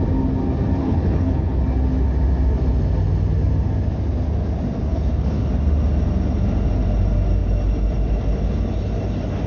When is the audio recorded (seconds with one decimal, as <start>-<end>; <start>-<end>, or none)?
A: 0.0-0.8; 1.6-4.9; 5.5-9.5